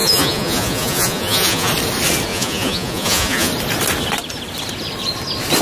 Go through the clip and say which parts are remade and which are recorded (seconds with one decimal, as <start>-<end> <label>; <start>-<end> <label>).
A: 0.0-1.7 remade; 1.7-2.3 recorded; 2.3-3.5 remade; 3.5-5.6 recorded